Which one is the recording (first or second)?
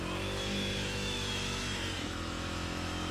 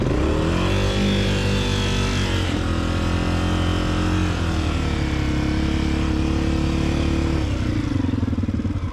second